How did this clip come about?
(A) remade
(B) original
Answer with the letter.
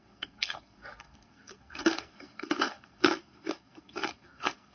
A